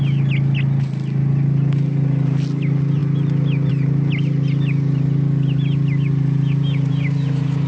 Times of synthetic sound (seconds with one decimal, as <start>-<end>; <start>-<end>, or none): none